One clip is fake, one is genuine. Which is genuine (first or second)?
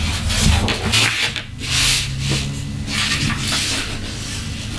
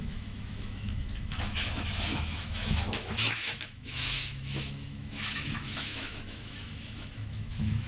first